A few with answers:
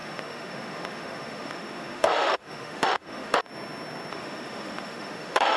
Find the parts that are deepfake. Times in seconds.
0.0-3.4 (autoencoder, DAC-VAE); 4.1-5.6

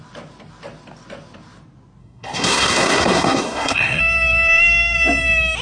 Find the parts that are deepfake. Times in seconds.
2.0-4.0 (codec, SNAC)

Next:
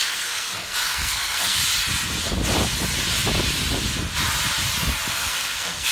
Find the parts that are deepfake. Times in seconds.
0.0-1.6 (codec, SNAC); 5.1-5.9

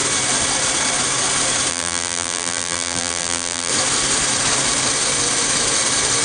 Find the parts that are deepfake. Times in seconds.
1.7-3.7 (vocoder, BigVGAN v2)

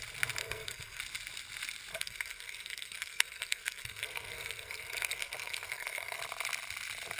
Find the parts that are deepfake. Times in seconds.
0.4-1.0 (codec, SNAC); 1.9-6.2